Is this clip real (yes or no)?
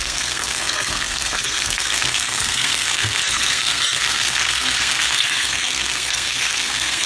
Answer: no